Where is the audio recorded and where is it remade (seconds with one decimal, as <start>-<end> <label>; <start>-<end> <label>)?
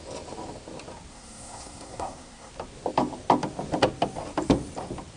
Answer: 0.0-1.1 recorded; 1.1-2.5 remade; 2.5-5.2 recorded